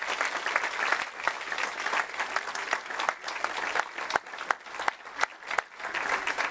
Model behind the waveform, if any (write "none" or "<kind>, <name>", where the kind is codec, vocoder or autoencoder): none